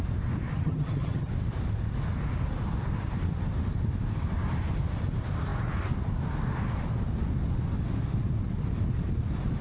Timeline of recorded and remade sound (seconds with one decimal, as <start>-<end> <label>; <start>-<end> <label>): 0.0-0.5 recorded; 0.5-1.3 remade; 1.3-9.6 recorded